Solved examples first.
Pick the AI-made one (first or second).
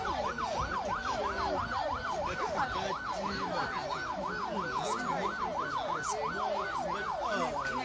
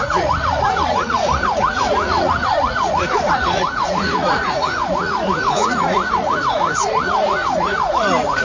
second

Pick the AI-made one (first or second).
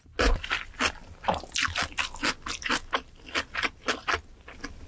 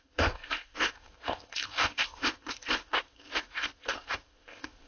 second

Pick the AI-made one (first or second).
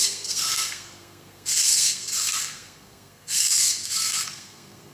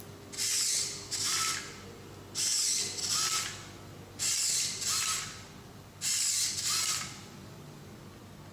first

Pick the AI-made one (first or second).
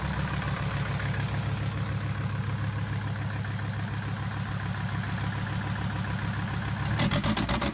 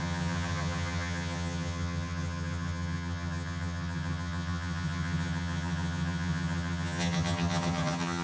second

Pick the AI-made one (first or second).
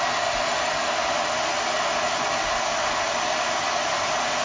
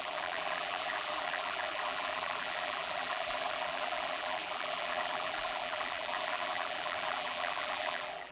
second